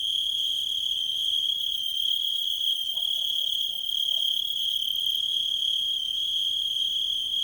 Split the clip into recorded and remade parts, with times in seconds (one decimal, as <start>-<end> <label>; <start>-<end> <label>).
0.0-0.7 recorded; 0.7-3.0 remade; 3.0-4.9 recorded; 4.9-5.4 remade; 5.4-7.4 recorded